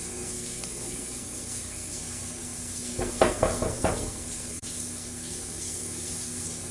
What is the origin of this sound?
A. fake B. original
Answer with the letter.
A